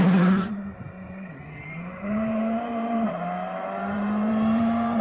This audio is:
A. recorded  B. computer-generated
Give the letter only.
B